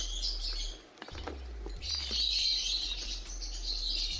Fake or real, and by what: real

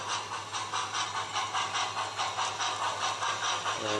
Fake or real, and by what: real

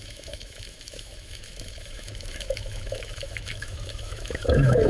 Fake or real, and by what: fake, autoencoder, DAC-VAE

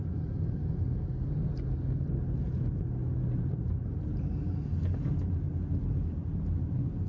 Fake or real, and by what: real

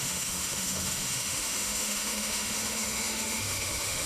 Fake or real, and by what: fake, autoencoder, DAC-VAE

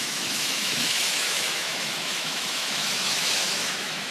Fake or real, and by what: fake, autoencoder, DAC-VAE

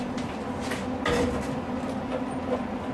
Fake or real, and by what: real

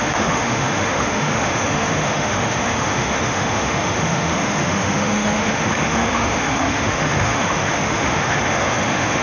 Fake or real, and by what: fake, autoencoder, DAC-VAE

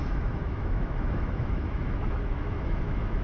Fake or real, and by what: fake, autoencoder, DAC-VAE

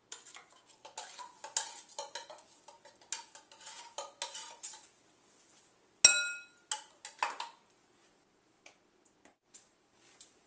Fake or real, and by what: real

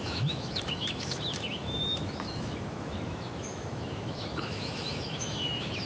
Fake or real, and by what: fake, autoencoder, DAC-VAE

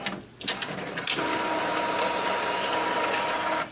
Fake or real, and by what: real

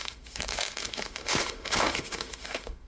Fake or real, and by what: fake, autoencoder, DAC-VAE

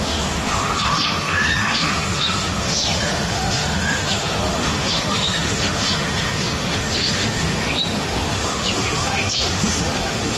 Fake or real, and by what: fake, autoencoder, DAC-VAE